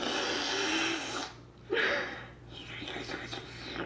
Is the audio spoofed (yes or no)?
no